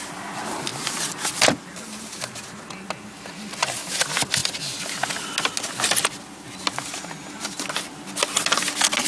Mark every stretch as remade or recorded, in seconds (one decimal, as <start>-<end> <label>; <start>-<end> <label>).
0.0-9.1 recorded